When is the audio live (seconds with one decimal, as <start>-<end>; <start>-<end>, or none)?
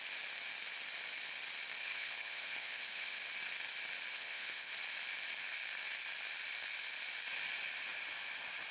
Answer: 0.0-1.8; 3.2-4.1; 4.7-8.7